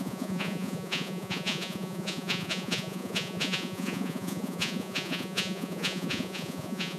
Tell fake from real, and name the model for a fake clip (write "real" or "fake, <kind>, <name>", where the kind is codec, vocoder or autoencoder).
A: fake, vocoder, Vocos